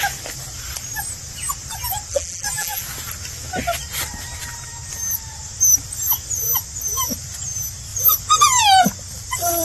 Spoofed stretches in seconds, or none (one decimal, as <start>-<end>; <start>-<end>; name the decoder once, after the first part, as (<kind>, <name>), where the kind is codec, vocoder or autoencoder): 2.1-2.8 (vocoder, BigVGAN v2)